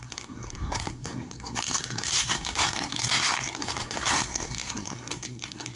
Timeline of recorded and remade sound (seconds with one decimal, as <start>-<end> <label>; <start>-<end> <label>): 0.0-5.8 remade